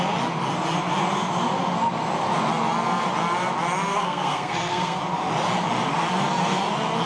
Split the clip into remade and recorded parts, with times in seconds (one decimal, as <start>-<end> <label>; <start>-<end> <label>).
0.0-3.9 recorded; 3.9-5.0 remade; 5.0-7.1 recorded